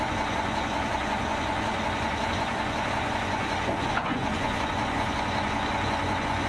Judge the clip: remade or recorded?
remade